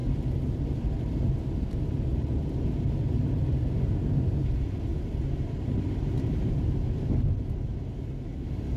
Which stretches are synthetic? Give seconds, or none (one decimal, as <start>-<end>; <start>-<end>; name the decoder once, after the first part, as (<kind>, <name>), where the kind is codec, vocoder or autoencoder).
0.0-1.8 (vocoder, BigVGAN v2); 4.9-6.6